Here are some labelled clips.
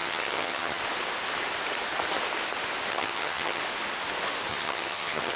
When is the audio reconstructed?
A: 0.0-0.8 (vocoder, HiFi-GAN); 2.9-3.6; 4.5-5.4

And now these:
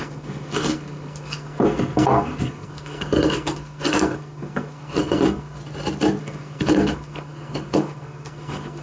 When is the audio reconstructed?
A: 0.0-5.6 (codec, SNAC); 6.2-8.8

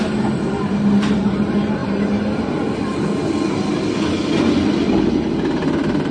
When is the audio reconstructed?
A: none

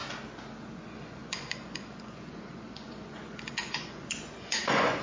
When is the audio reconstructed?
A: 0.7-5.0 (vocoder, Vocos)

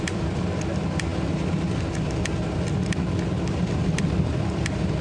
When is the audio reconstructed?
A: 0.0-1.1 (vocoder, BigVGAN v2); 4.0-5.0

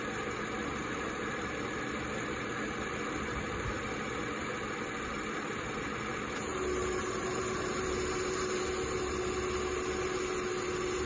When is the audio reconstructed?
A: none

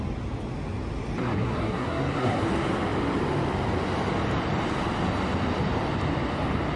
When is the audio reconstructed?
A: 1.2-2.4 (codec, SNAC)